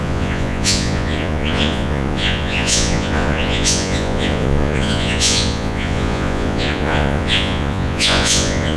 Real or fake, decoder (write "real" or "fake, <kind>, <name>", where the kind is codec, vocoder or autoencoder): fake, vocoder, Vocos